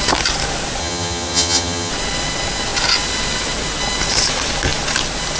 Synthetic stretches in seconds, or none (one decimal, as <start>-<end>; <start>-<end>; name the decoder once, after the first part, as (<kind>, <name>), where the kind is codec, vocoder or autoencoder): 0.8-1.9 (vocoder, HiFi-GAN)